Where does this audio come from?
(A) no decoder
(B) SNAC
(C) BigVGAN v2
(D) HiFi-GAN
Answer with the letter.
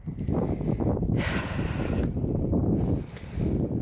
A